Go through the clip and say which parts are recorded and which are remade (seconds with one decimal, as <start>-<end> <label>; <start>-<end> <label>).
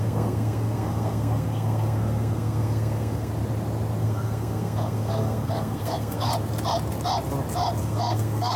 0.0-3.3 remade; 3.3-4.0 recorded; 4.0-6.3 remade; 6.3-7.8 recorded; 7.8-8.6 remade